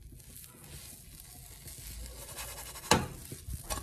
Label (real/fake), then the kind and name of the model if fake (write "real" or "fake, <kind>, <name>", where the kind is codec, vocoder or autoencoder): real